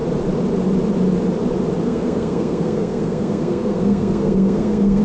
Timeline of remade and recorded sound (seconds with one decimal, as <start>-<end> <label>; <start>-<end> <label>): 0.0-1.8 recorded; 1.8-5.0 remade